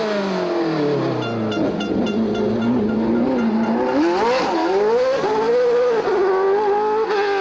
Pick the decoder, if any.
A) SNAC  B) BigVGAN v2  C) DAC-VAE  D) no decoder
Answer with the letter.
D